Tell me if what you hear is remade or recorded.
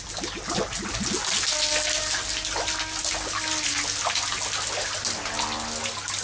recorded